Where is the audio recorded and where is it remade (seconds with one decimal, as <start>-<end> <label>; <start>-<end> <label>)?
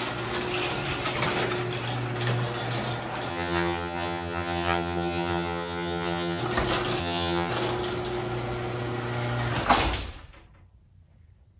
0.0-3.3 recorded; 3.3-6.4 remade; 6.4-7.0 recorded; 7.0-7.5 remade; 7.5-11.6 recorded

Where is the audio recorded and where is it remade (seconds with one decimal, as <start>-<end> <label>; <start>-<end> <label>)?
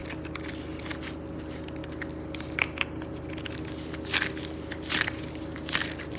0.0-6.2 recorded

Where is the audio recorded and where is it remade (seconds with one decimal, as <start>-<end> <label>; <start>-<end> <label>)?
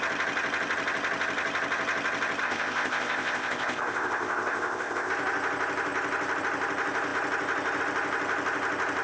0.0-2.4 recorded; 2.4-5.1 remade; 5.1-9.0 recorded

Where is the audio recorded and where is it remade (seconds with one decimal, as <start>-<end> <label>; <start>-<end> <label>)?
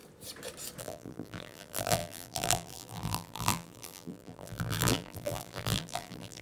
0.0-0.8 recorded; 0.8-6.4 remade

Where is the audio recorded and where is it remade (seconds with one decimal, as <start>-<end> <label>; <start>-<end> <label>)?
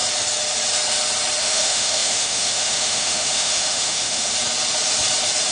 0.0-1.4 recorded; 1.4-4.3 remade; 4.3-5.5 recorded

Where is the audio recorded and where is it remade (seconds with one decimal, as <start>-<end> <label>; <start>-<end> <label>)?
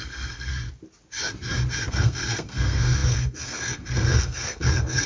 0.0-0.5 remade; 0.5-1.9 recorded; 1.9-5.1 remade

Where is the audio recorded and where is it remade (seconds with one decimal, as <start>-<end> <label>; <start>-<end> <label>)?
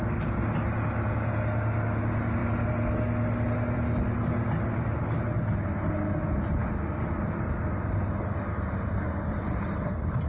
0.0-10.3 recorded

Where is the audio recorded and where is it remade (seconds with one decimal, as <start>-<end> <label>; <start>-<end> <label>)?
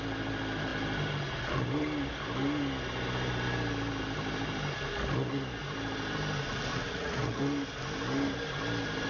0.0-6.7 recorded; 6.7-7.4 remade; 7.4-9.1 recorded